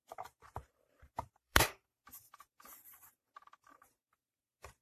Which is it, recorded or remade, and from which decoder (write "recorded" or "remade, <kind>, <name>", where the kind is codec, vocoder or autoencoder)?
remade, vocoder, BigVGAN v2